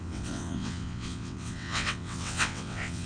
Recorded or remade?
remade